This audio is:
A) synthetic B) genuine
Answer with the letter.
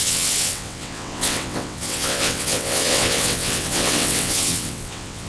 A